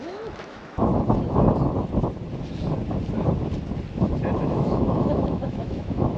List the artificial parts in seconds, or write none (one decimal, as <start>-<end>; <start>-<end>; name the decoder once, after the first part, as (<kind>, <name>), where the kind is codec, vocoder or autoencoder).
0.0-0.9 (autoencoder, DAC-VAE); 4.4-6.2